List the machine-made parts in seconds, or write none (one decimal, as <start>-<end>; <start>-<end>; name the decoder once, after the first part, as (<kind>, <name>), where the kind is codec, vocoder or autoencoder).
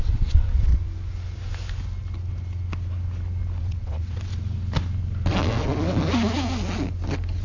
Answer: 0.0-0.7 (vocoder, WaveNeXt); 3.6-4.3